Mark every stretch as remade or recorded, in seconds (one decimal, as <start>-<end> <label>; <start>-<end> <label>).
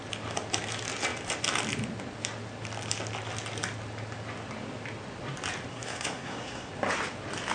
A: 0.0-5.7 recorded; 5.7-6.7 remade; 6.7-7.5 recorded